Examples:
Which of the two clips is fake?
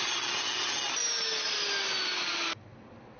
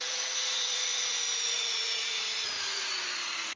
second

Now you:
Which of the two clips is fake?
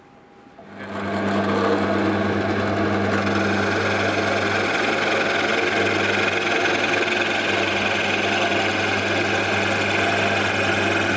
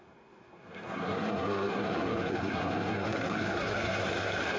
second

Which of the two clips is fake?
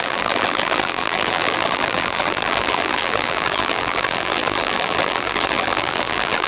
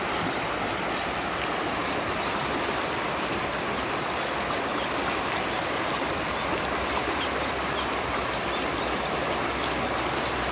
first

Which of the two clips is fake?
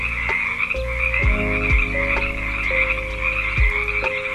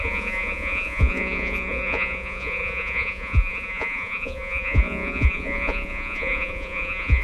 second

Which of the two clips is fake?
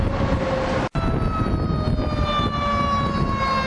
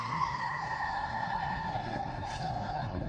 second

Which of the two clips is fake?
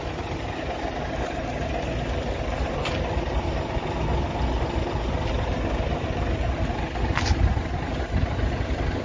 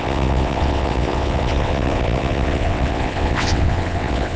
second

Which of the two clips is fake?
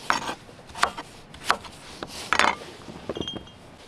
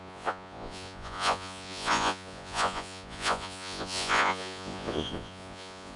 second